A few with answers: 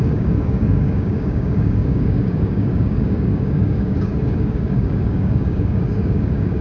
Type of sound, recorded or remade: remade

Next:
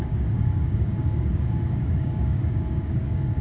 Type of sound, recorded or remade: remade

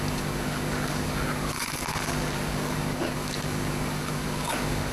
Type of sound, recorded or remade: remade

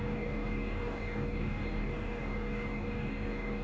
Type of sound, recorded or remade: remade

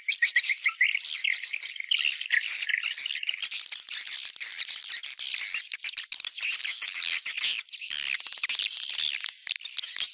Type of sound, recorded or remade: recorded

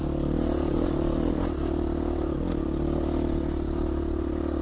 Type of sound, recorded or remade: recorded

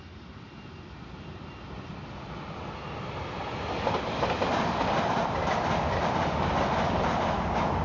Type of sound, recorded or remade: recorded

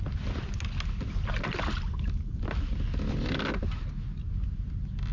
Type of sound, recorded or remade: recorded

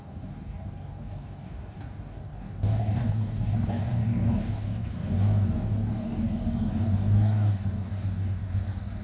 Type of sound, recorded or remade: remade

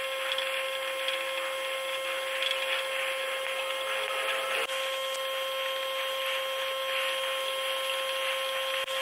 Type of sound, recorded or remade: recorded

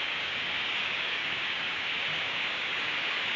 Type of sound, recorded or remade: remade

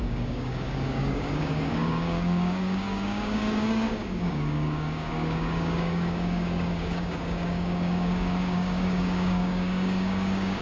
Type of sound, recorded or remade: remade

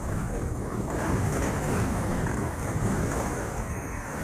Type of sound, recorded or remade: remade